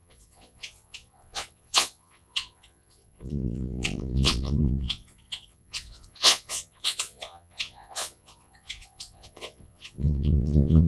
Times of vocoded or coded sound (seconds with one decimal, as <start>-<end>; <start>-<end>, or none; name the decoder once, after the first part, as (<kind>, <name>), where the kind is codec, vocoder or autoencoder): 0.0-10.9 (vocoder, Vocos)